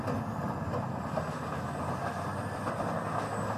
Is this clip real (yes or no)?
yes